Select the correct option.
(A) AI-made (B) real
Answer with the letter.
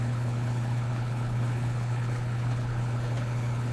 A